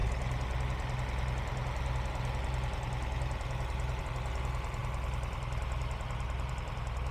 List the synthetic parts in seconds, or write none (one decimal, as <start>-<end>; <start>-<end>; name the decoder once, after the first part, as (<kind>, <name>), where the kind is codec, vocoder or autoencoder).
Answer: none